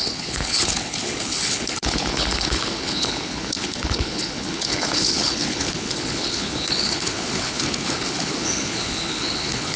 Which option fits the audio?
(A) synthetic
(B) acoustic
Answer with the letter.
A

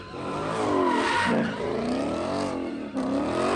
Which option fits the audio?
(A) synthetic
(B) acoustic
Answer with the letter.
B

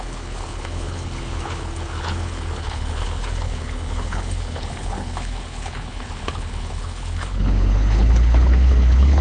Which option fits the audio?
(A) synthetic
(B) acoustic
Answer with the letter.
A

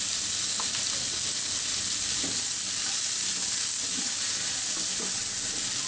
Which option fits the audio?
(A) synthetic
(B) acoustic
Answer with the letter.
B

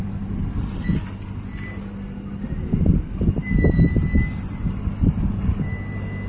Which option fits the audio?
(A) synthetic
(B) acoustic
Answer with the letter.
B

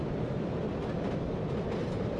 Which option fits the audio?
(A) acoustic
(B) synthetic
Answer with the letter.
A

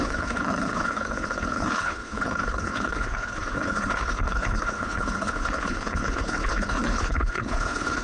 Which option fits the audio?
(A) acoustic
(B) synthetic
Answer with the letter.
B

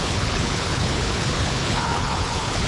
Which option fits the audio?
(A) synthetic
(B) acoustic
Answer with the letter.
A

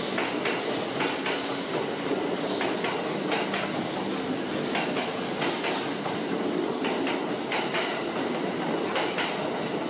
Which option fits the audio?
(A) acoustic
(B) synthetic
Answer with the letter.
A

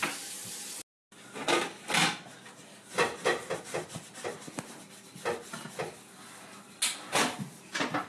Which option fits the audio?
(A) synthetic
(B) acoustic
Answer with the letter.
B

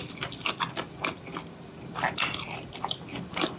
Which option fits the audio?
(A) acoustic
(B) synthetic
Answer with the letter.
A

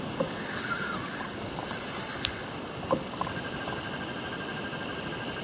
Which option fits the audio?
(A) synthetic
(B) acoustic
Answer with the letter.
B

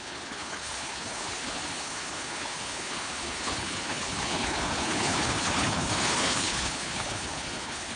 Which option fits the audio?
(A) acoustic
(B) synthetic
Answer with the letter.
B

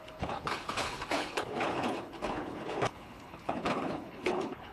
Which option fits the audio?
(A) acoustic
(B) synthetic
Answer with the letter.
B